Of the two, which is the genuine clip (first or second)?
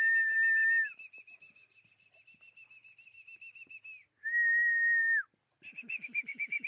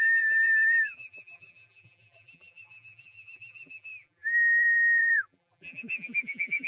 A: first